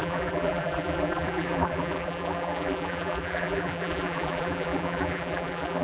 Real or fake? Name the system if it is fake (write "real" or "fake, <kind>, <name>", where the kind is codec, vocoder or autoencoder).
fake, vocoder, BigVGAN v2